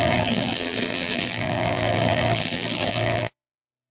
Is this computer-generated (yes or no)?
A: yes